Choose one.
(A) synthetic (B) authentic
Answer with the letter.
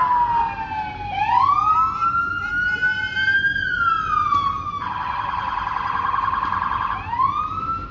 B